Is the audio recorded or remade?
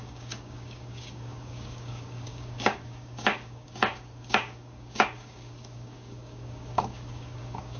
remade